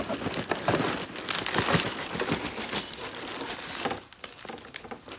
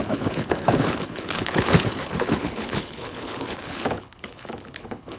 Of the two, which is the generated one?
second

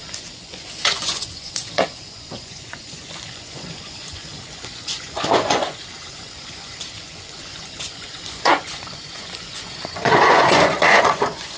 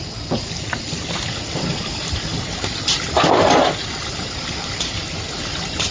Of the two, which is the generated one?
first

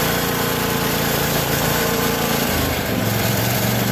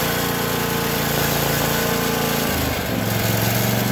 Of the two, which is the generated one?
first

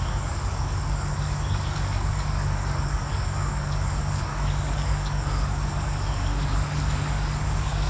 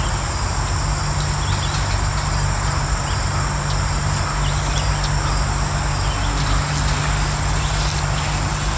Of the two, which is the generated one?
first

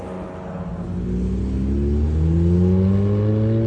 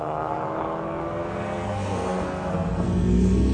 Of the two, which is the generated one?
second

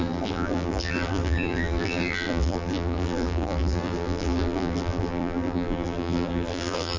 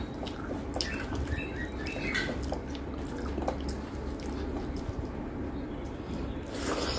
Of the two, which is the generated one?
first